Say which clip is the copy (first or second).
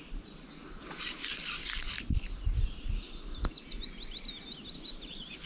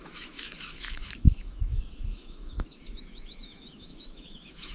second